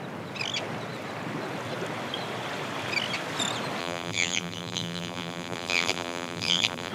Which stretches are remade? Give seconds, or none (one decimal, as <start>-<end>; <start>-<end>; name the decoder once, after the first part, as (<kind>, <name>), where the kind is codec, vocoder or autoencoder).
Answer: 3.8-6.9 (vocoder, BigVGAN v2)